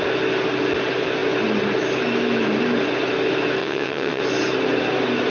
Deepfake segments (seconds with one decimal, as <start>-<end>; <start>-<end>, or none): 3.6-4.2